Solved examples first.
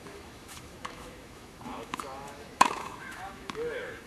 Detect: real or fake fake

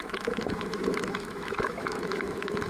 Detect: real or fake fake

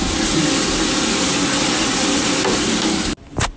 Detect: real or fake real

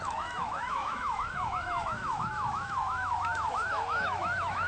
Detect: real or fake fake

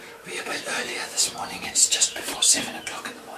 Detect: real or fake fake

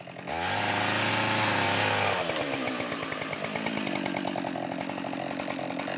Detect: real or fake real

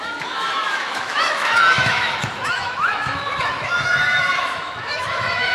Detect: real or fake fake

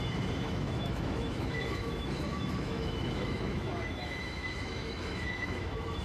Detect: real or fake fake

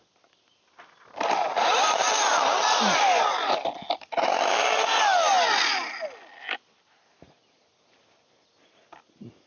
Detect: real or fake real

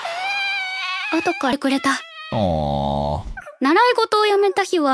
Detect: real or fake fake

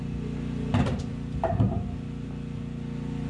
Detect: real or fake real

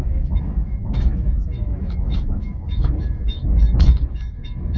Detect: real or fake fake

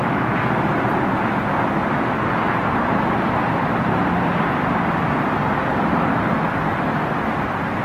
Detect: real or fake real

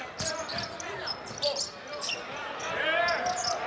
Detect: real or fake real